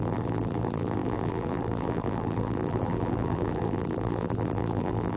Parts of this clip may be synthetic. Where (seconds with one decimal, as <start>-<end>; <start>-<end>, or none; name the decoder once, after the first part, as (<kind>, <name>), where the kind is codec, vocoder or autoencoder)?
0.0-5.2 (vocoder, BigVGAN v2)